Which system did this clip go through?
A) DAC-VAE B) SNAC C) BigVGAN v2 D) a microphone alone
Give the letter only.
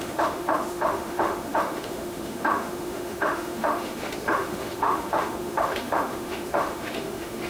A